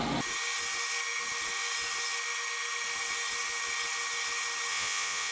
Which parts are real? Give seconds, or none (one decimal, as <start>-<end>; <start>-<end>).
0.0-4.7